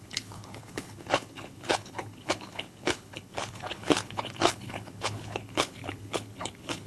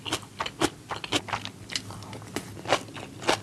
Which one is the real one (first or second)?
second